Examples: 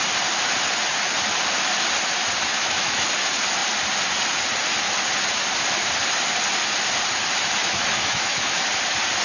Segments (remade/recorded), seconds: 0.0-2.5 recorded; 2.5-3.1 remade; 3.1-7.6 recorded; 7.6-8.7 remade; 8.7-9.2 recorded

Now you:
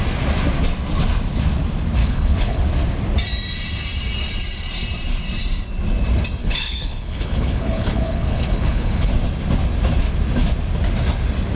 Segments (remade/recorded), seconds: 0.0-2.0 recorded; 2.0-2.6 remade; 2.6-6.4 recorded; 6.4-9.1 remade; 9.1-11.6 recorded

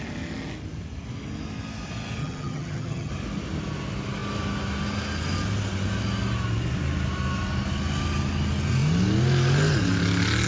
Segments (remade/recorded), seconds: 0.0-2.2 recorded; 2.2-3.1 remade; 3.1-10.5 recorded

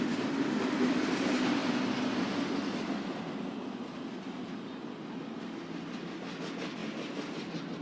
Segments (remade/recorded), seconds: 0.0-7.8 recorded

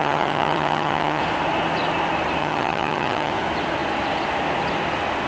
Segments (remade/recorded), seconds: 0.0-1.2 remade; 1.2-2.4 recorded; 2.4-3.3 remade; 3.3-5.3 recorded